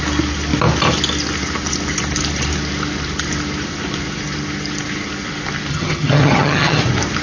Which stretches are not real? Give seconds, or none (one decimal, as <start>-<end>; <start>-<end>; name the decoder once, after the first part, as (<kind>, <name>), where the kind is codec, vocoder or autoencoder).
5.7-6.8 (vocoder, HiFi-GAN)